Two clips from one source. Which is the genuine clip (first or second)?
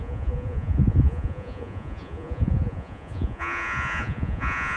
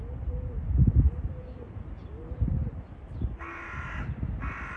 second